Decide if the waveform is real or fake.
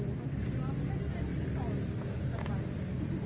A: real